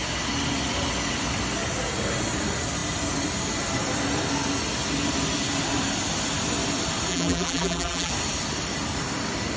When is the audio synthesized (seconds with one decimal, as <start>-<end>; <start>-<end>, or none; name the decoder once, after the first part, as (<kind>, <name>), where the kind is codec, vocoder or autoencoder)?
7.1-8.1 (vocoder, BigVGAN v2)